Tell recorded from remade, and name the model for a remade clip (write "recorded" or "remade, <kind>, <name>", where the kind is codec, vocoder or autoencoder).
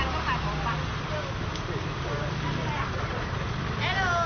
recorded